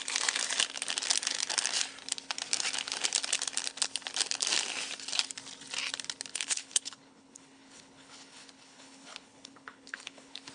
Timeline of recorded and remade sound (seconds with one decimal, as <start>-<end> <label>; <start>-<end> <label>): 0.0-6.3 recorded; 6.3-10.5 remade